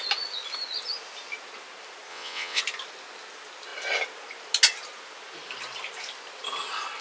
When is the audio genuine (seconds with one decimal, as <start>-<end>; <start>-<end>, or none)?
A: 0.0-2.1; 2.6-7.0